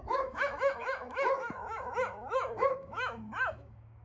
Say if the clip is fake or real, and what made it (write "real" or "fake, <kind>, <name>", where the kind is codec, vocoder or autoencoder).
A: fake, autoencoder, DAC-VAE